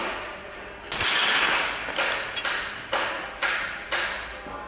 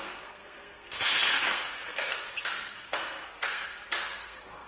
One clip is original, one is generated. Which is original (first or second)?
first